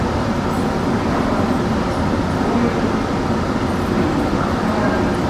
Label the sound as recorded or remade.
recorded